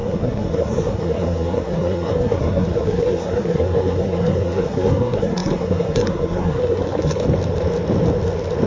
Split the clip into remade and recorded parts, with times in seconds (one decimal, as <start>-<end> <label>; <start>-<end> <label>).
0.0-7.2 remade; 7.2-8.7 recorded